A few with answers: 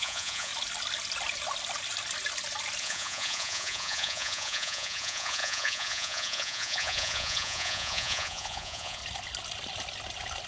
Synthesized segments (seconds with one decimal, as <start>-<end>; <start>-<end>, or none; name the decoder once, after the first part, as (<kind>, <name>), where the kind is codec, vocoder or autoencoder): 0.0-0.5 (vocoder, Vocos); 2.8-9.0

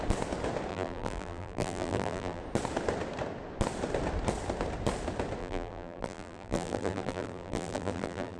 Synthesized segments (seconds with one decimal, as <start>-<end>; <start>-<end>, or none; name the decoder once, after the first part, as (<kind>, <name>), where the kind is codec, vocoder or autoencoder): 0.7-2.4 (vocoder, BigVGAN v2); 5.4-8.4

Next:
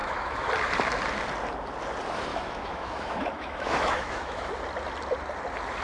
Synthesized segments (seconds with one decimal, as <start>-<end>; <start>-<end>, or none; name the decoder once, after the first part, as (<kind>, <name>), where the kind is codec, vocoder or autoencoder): 0.0-0.5 (autoencoder, DAC-VAE); 2.3-4.5

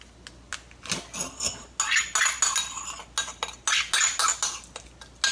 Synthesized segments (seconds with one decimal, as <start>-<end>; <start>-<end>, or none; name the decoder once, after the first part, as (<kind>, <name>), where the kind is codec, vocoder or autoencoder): none

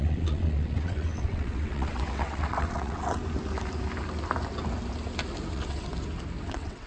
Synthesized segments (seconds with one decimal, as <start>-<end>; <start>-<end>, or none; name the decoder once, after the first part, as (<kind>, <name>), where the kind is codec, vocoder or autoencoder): 0.0-3.2 (vocoder, WaveNeXt); 5.5-5.9; 6.5-6.9

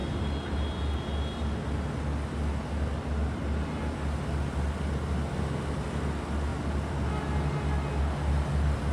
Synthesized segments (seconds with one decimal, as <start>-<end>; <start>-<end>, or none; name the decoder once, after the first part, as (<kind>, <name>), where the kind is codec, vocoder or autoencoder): none

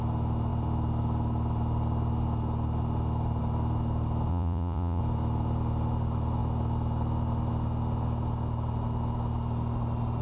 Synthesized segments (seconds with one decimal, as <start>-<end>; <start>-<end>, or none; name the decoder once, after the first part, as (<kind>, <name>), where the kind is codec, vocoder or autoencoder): 4.3-5.0 (vocoder, Vocos)

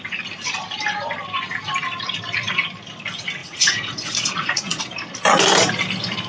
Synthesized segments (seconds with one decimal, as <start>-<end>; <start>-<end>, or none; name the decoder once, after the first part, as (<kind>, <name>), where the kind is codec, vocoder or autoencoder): 3.4-4.8 (vocoder, Vocos)